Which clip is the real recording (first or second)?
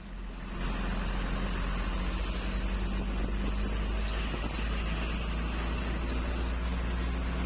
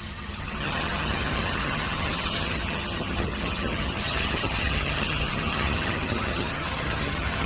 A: first